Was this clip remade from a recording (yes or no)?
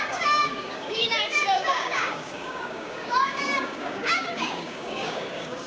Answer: yes